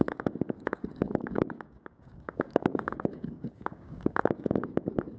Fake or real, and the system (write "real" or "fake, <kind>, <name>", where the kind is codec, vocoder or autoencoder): fake, codec, DAC